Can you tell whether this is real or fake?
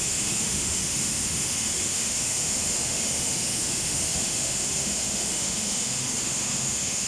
fake